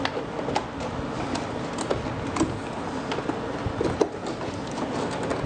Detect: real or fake real